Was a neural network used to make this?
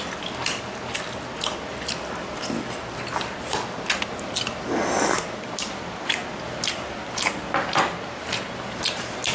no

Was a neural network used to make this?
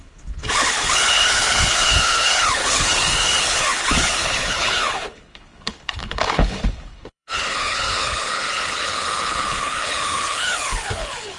yes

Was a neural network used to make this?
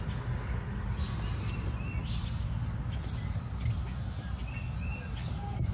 no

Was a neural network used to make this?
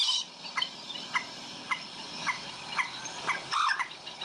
no